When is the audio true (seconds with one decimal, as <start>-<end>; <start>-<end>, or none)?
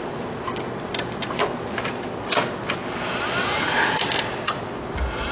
0.0-3.4; 4.0-5.3